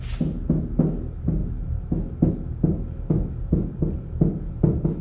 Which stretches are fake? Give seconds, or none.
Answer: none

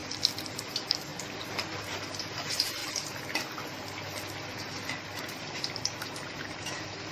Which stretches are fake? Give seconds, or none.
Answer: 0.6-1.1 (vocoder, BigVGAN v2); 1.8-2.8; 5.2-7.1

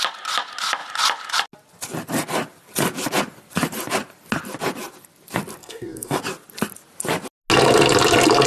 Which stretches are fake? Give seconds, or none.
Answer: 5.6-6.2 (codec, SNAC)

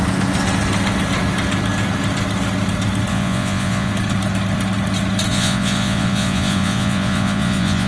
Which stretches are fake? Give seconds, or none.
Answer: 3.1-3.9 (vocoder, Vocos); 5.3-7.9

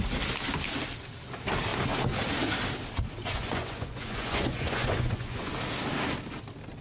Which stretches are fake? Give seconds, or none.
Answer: 3.2-5.5 (vocoder, Vocos)

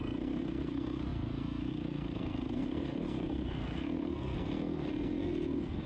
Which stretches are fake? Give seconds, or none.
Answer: 0.0-5.9 (codec, SNAC)